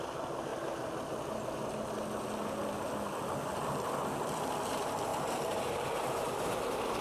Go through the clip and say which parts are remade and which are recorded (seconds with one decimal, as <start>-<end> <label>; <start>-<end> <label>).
0.0-5.1 recorded; 5.1-6.6 remade; 6.6-7.0 recorded